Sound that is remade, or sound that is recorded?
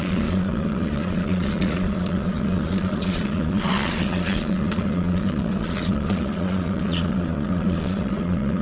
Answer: remade